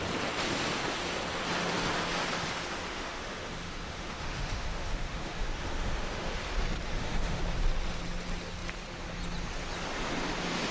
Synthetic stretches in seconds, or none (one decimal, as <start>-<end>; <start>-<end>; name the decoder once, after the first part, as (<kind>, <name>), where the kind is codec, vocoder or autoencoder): 2.9-6.4 (autoencoder, DAC-VAE); 6.9-7.4